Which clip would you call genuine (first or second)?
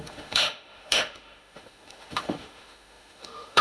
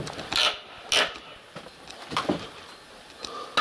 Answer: second